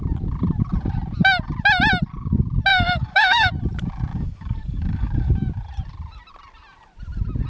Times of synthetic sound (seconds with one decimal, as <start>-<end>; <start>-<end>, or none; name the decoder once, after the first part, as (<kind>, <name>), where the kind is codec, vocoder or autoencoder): 2.7-3.5 (codec, DAC); 4.1-5.3